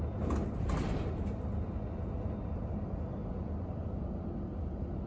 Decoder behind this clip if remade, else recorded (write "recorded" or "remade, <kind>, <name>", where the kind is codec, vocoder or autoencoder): recorded